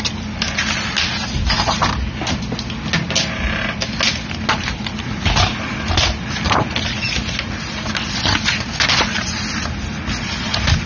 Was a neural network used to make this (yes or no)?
no